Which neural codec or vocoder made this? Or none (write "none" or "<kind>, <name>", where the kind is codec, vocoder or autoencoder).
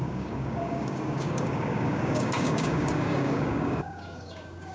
codec, DAC